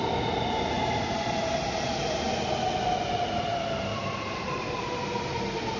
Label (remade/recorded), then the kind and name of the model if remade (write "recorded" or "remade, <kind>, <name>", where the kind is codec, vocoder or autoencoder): recorded